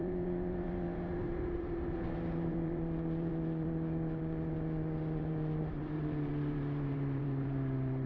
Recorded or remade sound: remade